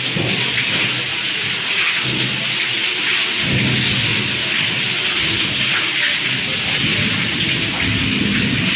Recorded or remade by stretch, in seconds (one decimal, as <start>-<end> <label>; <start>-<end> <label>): 0.0-1.1 recorded; 1.1-1.8 remade; 1.8-8.8 recorded